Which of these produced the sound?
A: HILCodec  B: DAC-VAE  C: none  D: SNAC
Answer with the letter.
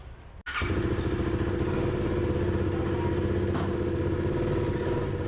C